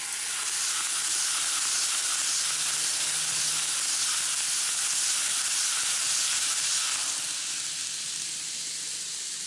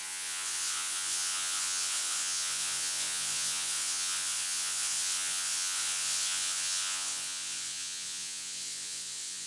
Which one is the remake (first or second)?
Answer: second